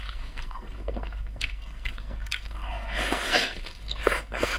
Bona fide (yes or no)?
no